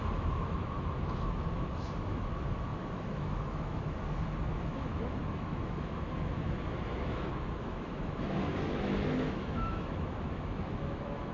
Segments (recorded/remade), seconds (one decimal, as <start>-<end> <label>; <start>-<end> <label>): 0.0-11.3 remade